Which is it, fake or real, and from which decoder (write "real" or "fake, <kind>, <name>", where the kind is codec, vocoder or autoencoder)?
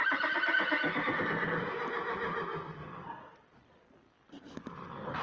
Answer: real